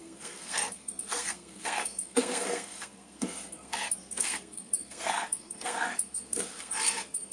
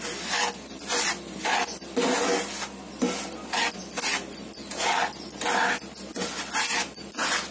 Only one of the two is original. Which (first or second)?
second